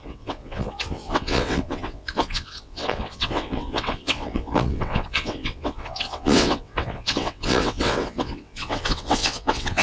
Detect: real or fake fake